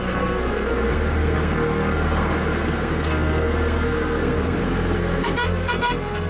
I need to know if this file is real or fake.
fake